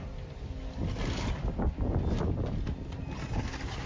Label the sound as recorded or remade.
recorded